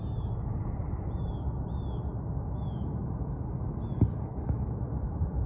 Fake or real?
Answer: real